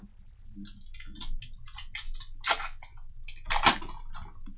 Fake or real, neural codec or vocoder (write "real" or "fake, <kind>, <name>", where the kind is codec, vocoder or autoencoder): real